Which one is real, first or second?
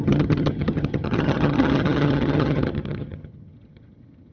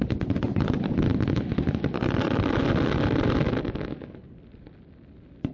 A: second